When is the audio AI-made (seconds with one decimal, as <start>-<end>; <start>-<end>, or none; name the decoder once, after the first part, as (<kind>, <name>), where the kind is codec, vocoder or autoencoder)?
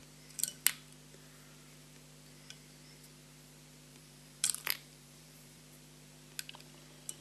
3.9-5.6 (vocoder, BigVGAN v2)